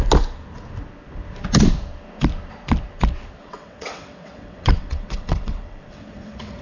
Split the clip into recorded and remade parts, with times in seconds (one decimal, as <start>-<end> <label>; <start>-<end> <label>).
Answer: 0.0-3.4 recorded; 3.4-6.6 remade